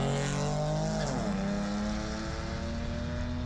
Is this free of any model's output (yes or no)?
yes